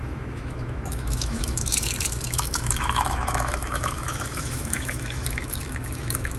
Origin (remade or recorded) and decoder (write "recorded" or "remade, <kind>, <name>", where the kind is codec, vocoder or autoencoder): remade, autoencoder, DAC-VAE